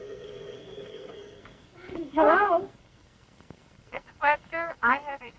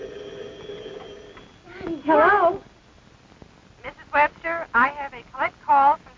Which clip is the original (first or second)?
second